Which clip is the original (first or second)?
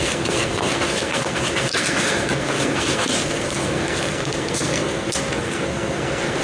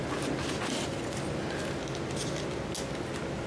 second